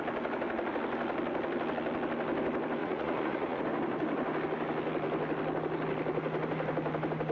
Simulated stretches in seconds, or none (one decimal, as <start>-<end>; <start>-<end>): 2.8-3.6